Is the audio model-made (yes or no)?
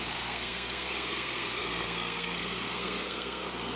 yes